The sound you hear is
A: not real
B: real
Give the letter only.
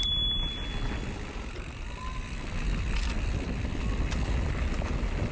B